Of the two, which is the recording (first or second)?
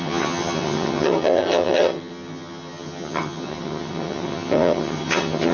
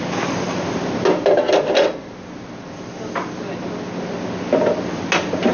second